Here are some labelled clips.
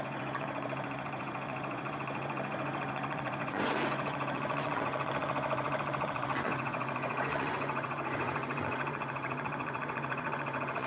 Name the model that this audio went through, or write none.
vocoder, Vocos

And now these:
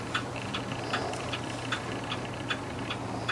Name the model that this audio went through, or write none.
vocoder, BigVGAN v2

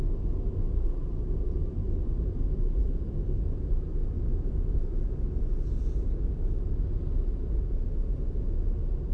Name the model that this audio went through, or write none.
none